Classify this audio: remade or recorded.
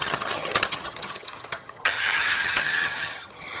remade